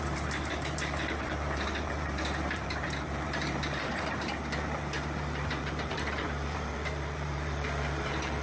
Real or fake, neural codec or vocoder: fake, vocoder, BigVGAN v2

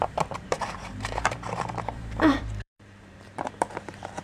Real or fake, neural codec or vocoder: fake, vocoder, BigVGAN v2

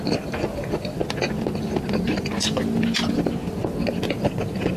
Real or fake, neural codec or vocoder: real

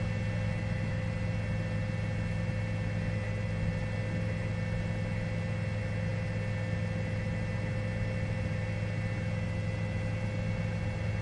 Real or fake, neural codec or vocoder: real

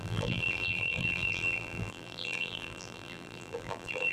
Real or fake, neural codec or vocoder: fake, vocoder, BigVGAN v2